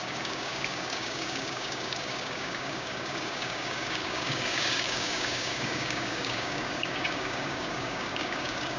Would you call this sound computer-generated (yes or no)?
yes